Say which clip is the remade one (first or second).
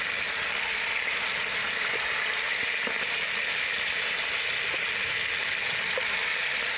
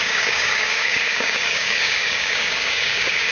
second